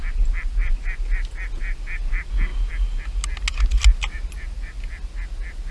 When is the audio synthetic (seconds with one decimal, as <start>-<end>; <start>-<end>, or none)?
none